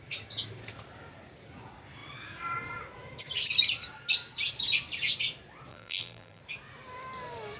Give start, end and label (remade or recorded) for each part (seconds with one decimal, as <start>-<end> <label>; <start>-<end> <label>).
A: 0.0-5.7 recorded; 5.7-6.4 remade; 6.4-7.6 recorded